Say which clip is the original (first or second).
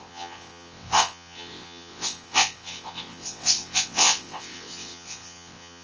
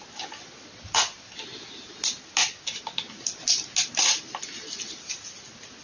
second